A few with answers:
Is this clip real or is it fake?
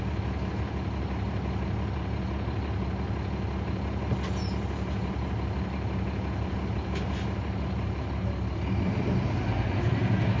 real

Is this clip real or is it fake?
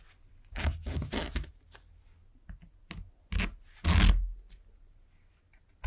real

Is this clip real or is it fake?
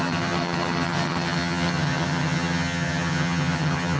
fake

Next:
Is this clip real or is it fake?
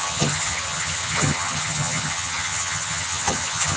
fake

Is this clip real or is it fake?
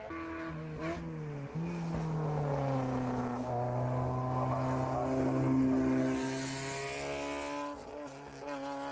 real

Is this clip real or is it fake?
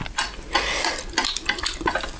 real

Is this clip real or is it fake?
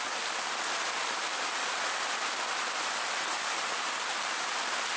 real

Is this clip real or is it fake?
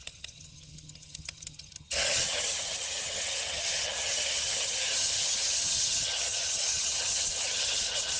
fake